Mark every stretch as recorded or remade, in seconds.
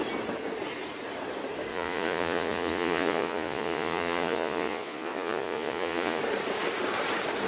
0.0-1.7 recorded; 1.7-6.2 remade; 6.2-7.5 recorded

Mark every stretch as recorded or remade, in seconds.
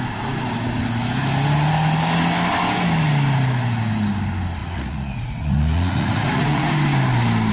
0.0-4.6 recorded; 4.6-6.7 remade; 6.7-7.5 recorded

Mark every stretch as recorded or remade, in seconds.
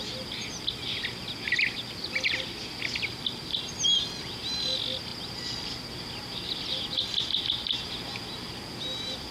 0.0-3.1 recorded; 3.1-3.7 remade; 3.7-9.3 recorded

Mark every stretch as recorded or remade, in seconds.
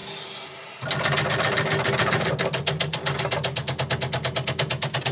0.0-5.1 recorded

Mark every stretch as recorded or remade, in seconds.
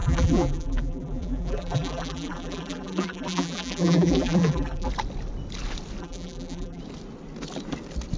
0.0-4.9 remade; 4.9-6.0 recorded; 6.0-6.8 remade; 6.8-8.2 recorded